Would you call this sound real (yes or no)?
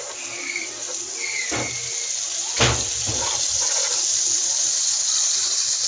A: yes